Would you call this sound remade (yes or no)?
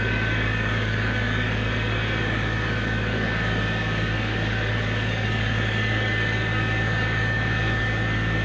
yes